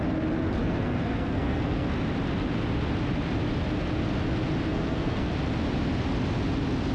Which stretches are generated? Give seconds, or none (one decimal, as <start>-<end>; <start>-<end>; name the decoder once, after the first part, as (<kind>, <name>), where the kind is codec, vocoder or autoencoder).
0.6-1.9 (codec, SNAC); 4.7-5.3